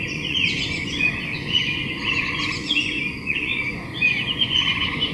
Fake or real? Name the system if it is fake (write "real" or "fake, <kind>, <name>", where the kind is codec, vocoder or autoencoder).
fake, vocoder, Vocos